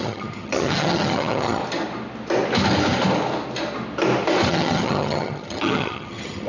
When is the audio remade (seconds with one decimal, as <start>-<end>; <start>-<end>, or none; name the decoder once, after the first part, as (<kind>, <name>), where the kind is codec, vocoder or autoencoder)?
0.0-1.6 (vocoder, HiFi-GAN); 4.5-6.5